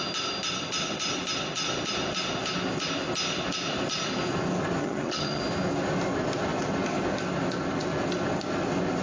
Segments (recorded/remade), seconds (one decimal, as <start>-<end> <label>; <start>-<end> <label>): 0.0-4.8 recorded; 4.8-5.4 remade; 5.4-9.0 recorded